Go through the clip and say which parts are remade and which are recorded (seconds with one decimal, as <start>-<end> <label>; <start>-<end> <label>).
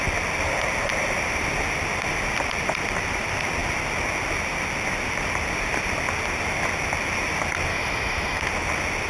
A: 0.0-7.7 recorded; 7.7-8.4 remade; 8.4-9.1 recorded